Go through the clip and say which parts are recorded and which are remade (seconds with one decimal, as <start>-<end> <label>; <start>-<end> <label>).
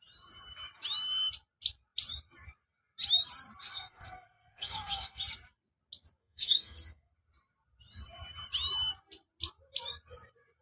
0.0-3.7 recorded; 3.7-5.2 remade; 5.2-6.2 recorded; 6.2-7.1 remade; 7.1-10.6 recorded